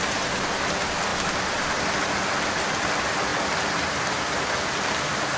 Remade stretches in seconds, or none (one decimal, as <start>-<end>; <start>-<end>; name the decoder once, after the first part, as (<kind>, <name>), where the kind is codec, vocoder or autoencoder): none